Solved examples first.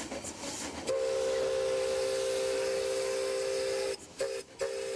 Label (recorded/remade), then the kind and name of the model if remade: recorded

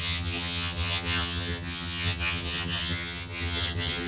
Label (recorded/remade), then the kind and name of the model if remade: remade, vocoder, HiFi-GAN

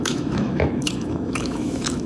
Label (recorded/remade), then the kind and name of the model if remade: remade, autoencoder, DAC-VAE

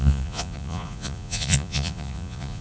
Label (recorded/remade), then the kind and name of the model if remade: remade, vocoder, Vocos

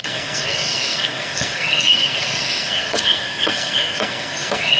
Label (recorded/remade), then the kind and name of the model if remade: remade, codec, SNAC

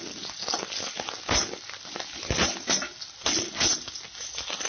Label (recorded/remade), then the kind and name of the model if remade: recorded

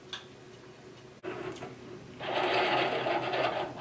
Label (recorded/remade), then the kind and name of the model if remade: recorded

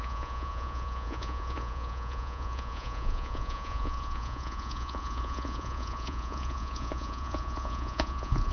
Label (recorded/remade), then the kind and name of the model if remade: remade, vocoder, Vocos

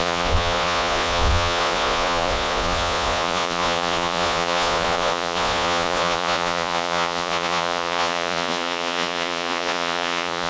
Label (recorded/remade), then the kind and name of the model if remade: remade, vocoder, Vocos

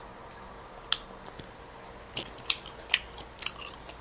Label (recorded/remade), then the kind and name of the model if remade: recorded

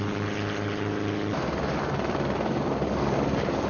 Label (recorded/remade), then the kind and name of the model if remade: recorded